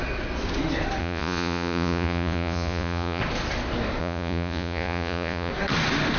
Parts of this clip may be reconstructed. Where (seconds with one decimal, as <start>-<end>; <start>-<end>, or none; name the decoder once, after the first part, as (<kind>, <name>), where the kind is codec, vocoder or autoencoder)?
1.0-3.2 (vocoder, Vocos); 4.0-5.5